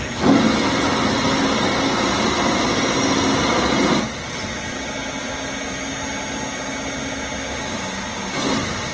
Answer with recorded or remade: recorded